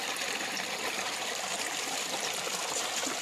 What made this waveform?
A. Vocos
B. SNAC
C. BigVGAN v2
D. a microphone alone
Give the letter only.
D